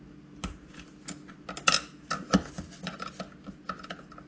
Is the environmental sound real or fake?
real